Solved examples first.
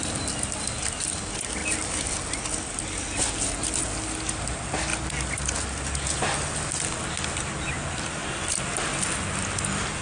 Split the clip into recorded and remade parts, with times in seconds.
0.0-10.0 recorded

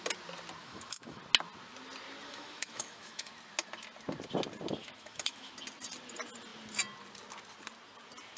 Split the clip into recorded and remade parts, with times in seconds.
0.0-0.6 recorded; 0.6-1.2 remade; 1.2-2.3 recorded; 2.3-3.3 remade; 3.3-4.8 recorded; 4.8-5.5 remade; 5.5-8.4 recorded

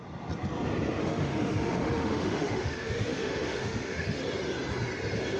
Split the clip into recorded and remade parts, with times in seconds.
0.0-1.0 recorded; 1.0-4.2 remade; 4.2-5.4 recorded

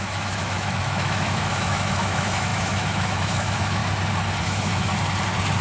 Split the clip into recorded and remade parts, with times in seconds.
0.0-3.8 remade; 3.8-4.4 recorded; 4.4-4.9 remade; 4.9-5.6 recorded